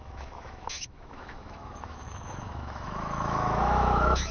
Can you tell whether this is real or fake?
fake